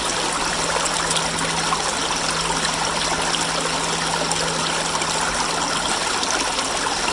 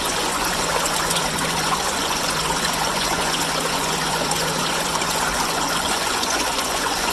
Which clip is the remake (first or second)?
second